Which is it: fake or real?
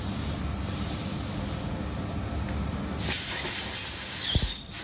real